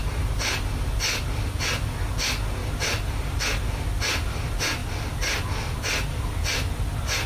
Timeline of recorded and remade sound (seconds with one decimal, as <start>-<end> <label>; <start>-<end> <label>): 0.0-2.6 recorded; 2.6-3.4 remade; 3.4-7.3 recorded